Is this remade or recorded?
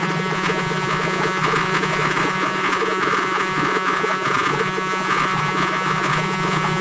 remade